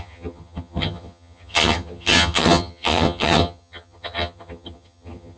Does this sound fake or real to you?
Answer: fake